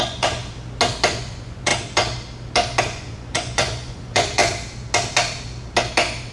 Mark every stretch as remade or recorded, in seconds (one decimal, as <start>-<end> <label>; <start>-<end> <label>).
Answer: 0.0-0.4 remade; 0.4-1.1 recorded; 1.1-1.7 remade; 1.7-2.8 recorded; 2.8-4.4 remade; 4.4-6.3 recorded